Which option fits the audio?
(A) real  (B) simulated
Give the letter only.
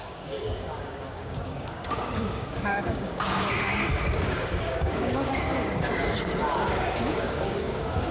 B